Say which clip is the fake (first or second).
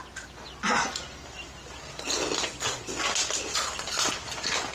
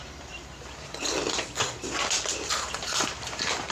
second